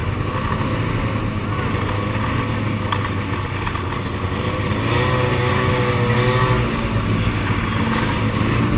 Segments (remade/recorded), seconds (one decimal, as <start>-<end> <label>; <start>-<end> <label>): 0.0-5.5 recorded; 5.5-8.2 remade; 8.2-8.8 recorded